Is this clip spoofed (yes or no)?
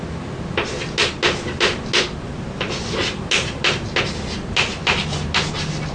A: no